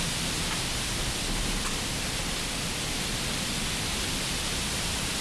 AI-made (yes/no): no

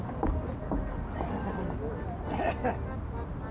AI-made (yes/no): no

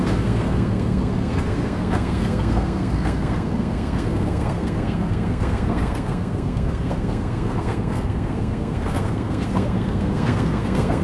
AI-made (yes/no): yes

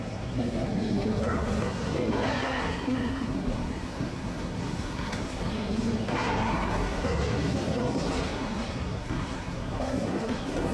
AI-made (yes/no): yes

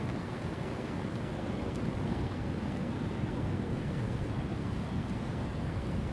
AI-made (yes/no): yes